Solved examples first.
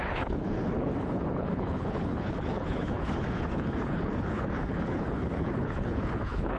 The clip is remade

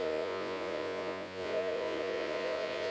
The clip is remade